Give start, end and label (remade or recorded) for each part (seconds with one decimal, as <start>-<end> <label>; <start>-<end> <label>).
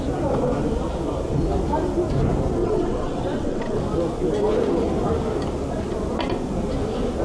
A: 0.0-2.6 recorded; 2.6-3.8 remade; 3.8-7.2 recorded